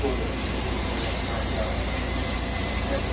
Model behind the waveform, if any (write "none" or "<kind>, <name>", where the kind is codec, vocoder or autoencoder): none